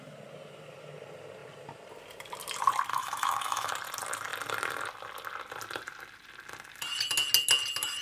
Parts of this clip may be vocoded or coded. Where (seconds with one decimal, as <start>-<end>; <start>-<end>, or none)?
2.9-3.7